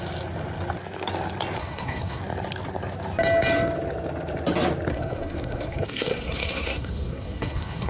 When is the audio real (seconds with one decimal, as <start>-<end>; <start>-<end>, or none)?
0.0-1.6; 2.2-4.9